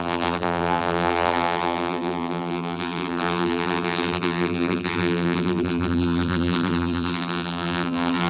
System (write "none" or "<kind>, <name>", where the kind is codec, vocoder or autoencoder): vocoder, BigVGAN v2